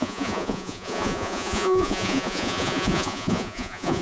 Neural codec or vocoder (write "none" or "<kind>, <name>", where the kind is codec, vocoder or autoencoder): vocoder, Vocos